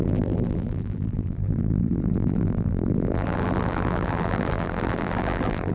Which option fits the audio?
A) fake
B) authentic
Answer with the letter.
A